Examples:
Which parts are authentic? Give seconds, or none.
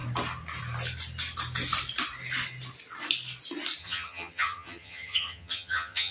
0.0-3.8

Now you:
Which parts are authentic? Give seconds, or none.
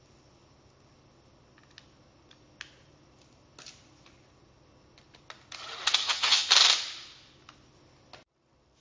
0.0-6.0; 6.5-8.8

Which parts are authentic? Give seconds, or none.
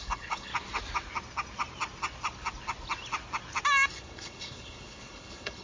0.5-3.9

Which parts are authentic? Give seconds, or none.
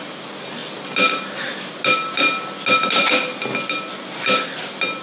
0.0-5.0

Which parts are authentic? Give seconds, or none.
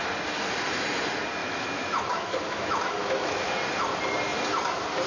0.0-1.4; 3.5-5.1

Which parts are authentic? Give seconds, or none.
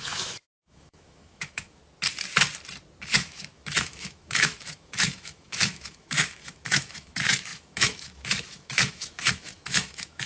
1.8-3.1